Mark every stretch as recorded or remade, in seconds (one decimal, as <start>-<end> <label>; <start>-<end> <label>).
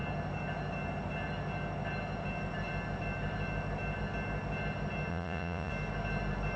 0.0-5.1 recorded; 5.1-5.7 remade; 5.7-6.6 recorded